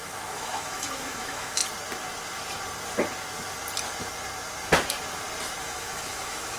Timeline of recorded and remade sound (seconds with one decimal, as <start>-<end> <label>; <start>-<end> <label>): 0.0-1.6 remade; 1.6-5.6 recorded; 5.6-6.6 remade